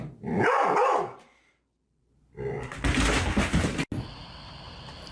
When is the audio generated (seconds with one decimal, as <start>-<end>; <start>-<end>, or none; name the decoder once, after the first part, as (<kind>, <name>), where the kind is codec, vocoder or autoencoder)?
none